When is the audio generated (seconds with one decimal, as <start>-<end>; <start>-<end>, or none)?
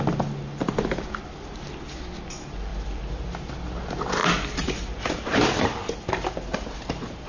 2.7-3.2; 4.2-5.1